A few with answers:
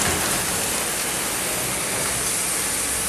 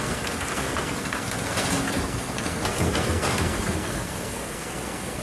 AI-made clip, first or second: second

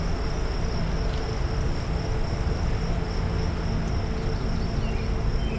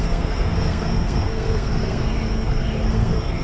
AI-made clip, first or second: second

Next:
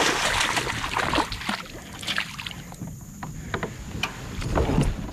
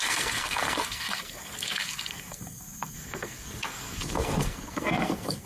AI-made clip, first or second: second